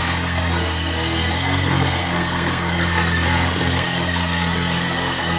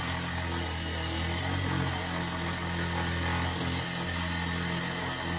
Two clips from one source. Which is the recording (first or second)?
second